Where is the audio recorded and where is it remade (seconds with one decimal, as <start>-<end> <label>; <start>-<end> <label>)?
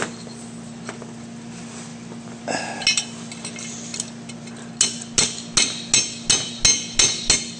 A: 0.0-7.6 recorded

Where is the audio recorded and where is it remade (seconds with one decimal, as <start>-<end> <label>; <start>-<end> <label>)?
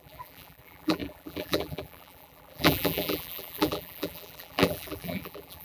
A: 0.0-5.6 remade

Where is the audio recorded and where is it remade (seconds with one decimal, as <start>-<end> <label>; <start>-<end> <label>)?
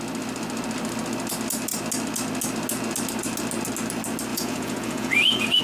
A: 0.0-4.3 recorded; 4.3-5.6 remade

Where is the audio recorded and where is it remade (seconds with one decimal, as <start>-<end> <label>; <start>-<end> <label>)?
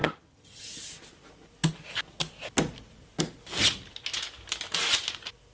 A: 0.0-0.7 remade; 0.7-5.5 recorded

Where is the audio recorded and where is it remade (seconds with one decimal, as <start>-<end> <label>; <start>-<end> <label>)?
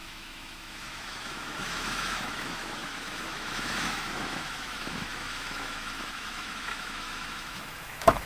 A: 0.0-8.3 remade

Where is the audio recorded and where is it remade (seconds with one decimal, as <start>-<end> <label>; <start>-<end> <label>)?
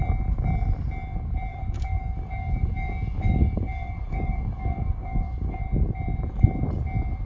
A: 0.0-1.5 recorded; 1.5-5.6 remade; 5.6-7.3 recorded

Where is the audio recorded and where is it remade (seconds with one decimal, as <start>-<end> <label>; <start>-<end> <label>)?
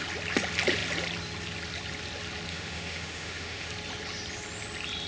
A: 0.0-2.5 recorded; 2.5-3.7 remade; 3.7-5.1 recorded